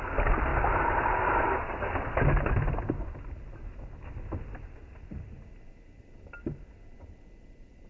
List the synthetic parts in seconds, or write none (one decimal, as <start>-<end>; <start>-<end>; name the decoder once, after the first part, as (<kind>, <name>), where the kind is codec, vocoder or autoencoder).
none